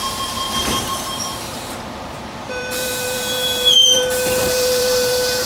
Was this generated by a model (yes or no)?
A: yes